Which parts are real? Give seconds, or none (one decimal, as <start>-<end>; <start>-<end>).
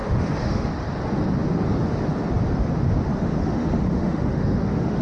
0.7-3.1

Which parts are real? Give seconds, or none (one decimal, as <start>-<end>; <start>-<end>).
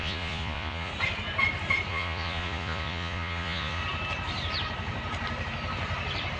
0.9-1.9; 3.8-6.4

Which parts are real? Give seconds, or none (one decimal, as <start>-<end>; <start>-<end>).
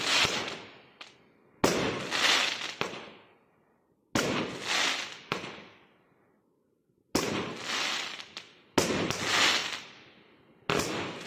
0.0-11.3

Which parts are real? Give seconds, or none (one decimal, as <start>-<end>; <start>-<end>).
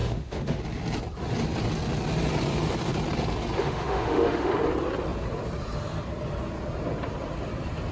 0.6-3.6; 4.5-7.9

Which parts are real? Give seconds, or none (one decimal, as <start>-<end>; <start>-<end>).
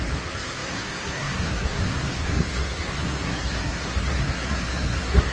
none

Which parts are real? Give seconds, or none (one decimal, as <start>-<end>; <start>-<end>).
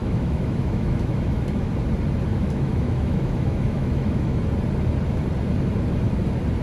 1.7-2.3; 4.4-6.6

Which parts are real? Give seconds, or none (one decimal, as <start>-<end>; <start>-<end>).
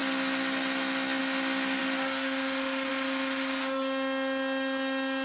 0.0-5.2